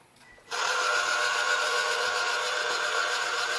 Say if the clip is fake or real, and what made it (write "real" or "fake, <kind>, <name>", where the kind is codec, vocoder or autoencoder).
fake, vocoder, Vocos